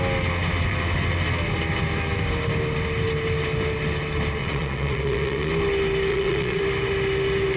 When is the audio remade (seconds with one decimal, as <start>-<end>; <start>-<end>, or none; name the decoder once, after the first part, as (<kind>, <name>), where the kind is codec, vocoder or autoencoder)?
4.4-5.5 (vocoder, Vocos); 6.1-6.6